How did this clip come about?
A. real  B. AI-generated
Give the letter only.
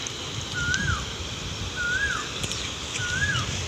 A